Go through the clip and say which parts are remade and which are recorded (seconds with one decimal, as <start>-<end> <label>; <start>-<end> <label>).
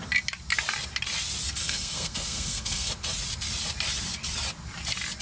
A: 0.0-1.6 recorded; 1.6-2.9 remade; 2.9-5.2 recorded